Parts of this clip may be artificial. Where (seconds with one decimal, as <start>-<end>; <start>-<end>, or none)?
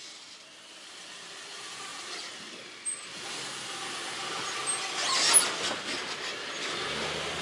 none